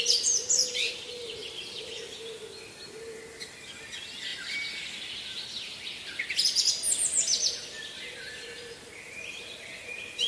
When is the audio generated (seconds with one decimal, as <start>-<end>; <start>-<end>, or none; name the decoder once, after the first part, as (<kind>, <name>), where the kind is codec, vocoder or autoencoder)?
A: none